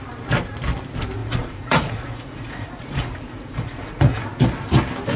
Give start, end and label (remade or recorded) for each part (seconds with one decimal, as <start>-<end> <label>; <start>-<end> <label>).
0.0-1.2 recorded; 1.2-4.2 remade; 4.2-5.2 recorded

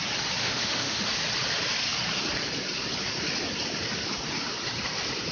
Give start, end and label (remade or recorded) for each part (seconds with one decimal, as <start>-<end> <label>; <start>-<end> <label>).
0.0-0.4 recorded; 0.4-1.0 remade; 1.0-5.3 recorded

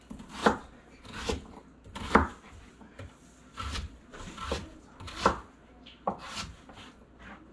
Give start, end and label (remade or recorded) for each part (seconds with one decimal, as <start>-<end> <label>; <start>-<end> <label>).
0.0-7.5 recorded

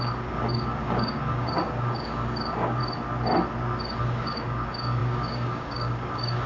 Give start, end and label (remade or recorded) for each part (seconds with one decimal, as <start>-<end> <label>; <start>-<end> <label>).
0.0-2.8 remade; 2.8-4.0 recorded; 4.0-6.5 remade

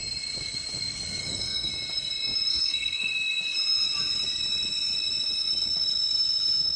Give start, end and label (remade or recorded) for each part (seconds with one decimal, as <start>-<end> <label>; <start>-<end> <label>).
0.0-1.2 recorded; 1.2-1.7 remade; 1.7-2.5 recorded; 2.5-3.1 remade; 3.1-6.8 recorded

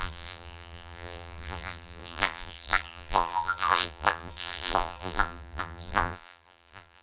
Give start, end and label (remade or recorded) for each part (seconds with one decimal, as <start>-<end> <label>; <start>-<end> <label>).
0.0-7.0 remade

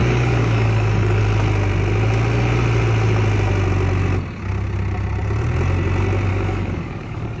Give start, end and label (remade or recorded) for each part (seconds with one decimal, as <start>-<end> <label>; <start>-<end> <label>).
0.0-1.2 remade; 1.2-6.3 recorded; 6.3-7.4 remade

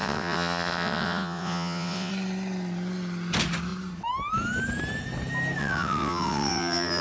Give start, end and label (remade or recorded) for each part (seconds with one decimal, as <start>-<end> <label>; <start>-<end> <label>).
0.0-2.1 remade; 2.1-5.6 recorded; 5.6-7.0 remade